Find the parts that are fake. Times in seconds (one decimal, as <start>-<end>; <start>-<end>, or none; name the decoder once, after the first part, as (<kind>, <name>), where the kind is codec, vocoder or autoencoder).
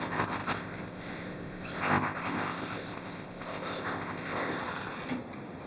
0.0-4.6 (codec, ZipCodec)